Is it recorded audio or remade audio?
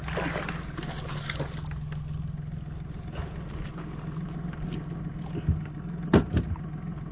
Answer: recorded